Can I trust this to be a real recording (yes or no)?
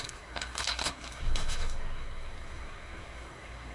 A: no